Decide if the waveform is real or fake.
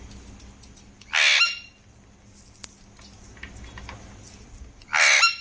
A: real